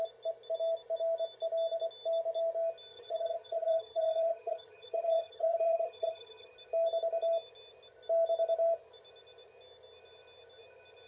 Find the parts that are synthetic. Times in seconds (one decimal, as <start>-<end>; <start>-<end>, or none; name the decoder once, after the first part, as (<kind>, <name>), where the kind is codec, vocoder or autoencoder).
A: 2.9-6.5 (vocoder, HiFi-GAN)